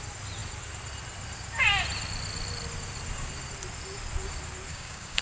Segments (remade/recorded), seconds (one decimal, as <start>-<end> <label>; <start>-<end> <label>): 0.0-4.7 recorded; 4.7-5.2 remade